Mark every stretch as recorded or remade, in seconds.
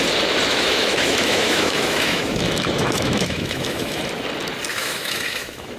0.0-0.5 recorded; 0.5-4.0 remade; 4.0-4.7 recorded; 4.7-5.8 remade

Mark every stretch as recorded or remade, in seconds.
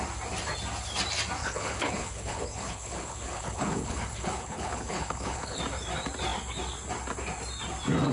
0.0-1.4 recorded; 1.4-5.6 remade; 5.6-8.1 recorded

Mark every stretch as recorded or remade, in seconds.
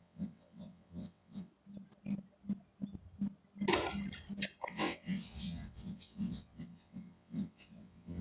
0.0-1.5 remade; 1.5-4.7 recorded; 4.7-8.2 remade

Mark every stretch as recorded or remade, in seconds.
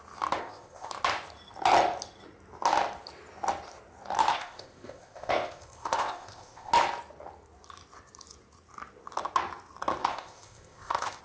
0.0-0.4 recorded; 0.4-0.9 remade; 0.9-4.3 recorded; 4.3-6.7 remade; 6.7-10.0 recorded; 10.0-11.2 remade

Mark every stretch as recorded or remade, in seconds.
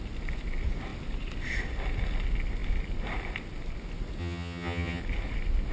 0.0-4.2 recorded; 4.2-5.0 remade; 5.0-5.7 recorded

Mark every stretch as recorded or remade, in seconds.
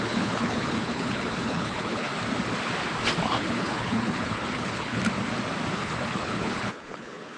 0.0-2.1 remade; 2.1-3.4 recorded; 3.4-5.0 remade; 5.0-5.7 recorded; 5.7-7.4 remade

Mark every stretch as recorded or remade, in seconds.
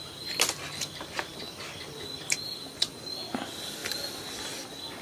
0.0-5.0 recorded